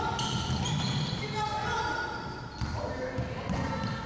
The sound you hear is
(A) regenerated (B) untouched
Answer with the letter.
B